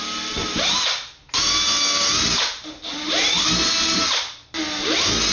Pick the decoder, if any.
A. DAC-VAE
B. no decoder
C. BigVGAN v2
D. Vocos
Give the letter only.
B